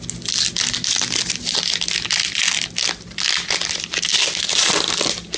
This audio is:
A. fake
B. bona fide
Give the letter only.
B